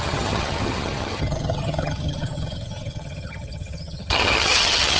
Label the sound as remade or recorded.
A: remade